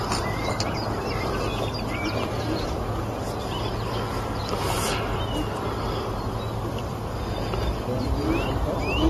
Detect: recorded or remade recorded